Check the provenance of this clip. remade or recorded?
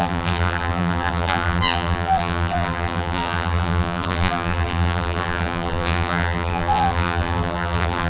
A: remade